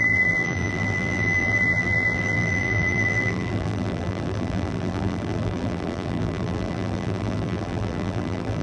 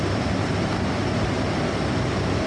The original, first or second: second